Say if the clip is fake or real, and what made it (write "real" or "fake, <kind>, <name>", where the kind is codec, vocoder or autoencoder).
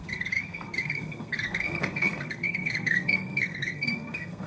fake, codec, SNAC